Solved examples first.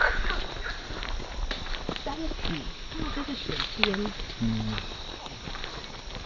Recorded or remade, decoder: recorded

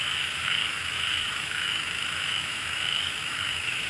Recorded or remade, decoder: remade, autoencoder, DAC-VAE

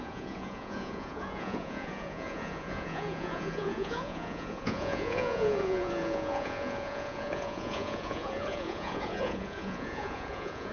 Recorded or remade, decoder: remade, vocoder, Vocos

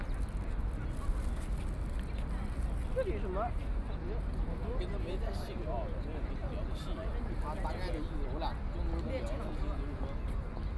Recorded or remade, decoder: recorded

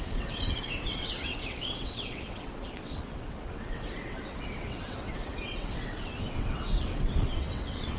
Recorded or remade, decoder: remade, vocoder, WaveNeXt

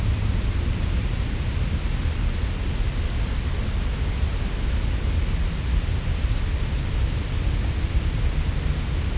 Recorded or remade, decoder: recorded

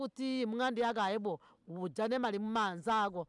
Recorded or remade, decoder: recorded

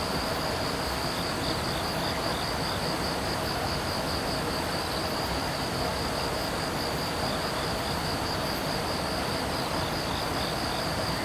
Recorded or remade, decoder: recorded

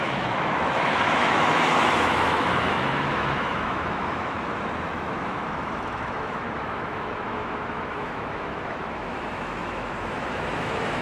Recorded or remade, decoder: remade, autoencoder, DAC-VAE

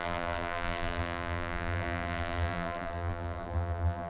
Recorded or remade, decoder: remade, vocoder, BigVGAN v2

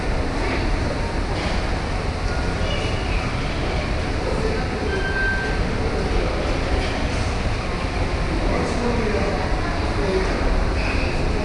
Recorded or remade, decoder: recorded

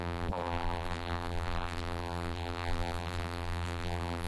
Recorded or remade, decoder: remade, vocoder, BigVGAN v2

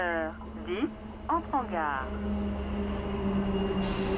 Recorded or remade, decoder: recorded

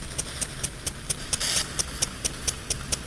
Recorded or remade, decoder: recorded